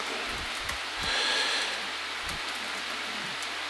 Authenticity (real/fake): real